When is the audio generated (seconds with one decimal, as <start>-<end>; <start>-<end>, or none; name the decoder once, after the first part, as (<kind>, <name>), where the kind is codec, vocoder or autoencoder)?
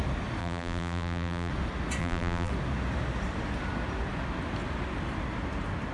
0.4-1.5 (vocoder, BigVGAN v2); 2.0-2.5